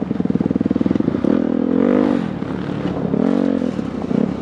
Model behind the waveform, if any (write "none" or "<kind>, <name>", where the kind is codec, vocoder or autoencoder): none